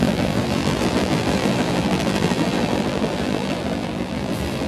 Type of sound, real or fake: fake